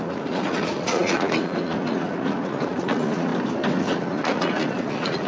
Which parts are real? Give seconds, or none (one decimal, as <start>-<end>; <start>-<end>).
3.3-3.8